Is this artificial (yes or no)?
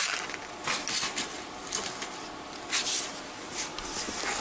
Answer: no